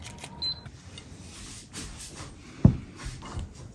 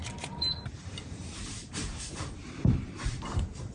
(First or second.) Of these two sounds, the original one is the first